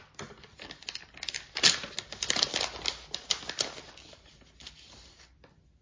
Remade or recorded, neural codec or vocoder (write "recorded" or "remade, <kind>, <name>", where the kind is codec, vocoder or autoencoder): recorded